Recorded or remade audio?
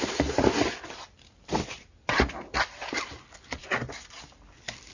remade